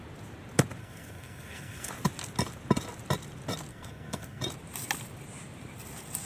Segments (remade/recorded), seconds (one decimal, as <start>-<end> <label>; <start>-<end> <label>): 0.0-0.8 recorded; 0.8-1.9 remade; 1.9-3.7 recorded; 3.7-4.4 remade; 4.4-6.3 recorded